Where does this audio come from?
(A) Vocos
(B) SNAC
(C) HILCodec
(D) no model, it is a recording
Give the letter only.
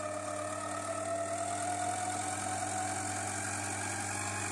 D